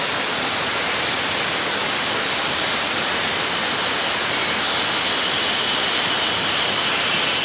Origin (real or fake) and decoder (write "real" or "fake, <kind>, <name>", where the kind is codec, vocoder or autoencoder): real